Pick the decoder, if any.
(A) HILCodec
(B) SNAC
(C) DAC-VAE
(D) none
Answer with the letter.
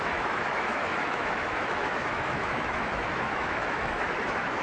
C